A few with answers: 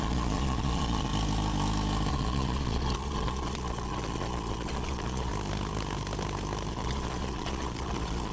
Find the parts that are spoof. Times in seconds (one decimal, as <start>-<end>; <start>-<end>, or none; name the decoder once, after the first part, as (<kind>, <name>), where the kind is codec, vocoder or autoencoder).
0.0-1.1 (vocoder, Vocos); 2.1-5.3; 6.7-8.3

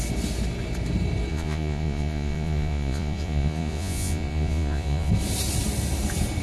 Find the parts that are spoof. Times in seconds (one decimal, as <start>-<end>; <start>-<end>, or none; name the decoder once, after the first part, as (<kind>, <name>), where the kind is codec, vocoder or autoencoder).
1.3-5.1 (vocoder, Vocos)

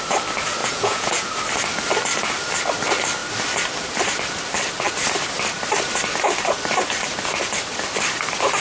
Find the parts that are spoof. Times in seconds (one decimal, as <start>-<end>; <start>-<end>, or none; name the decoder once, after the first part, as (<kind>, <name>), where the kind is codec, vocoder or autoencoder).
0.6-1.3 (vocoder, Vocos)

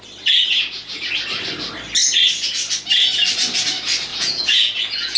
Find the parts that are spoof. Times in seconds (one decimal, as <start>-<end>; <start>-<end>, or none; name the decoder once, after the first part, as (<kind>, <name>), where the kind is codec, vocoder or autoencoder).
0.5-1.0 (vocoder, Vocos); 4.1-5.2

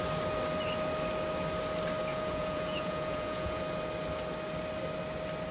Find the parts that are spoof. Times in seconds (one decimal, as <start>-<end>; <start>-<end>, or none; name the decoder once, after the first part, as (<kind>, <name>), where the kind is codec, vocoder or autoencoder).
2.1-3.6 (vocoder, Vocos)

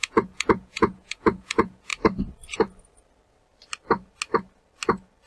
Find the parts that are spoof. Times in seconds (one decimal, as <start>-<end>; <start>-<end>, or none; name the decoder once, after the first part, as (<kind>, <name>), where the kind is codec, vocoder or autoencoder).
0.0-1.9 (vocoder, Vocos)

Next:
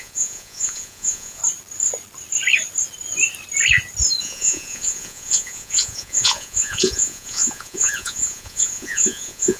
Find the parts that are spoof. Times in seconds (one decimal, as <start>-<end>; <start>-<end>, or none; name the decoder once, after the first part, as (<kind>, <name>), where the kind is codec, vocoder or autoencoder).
0.0-1.4 (vocoder, Vocos); 4.2-9.6